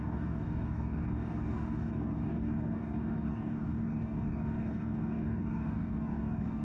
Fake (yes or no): yes